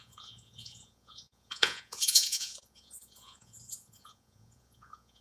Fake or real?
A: fake